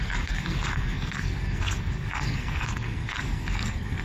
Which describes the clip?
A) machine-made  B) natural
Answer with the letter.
A